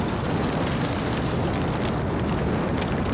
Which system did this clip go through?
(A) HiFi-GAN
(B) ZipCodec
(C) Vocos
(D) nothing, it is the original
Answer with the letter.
D